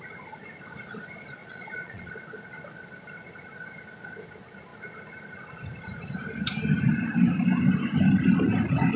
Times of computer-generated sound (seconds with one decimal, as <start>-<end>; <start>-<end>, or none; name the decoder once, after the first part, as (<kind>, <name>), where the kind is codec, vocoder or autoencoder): 1.4-2.1 (vocoder, Vocos)